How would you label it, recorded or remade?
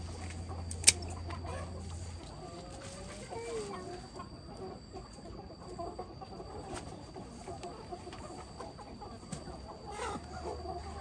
recorded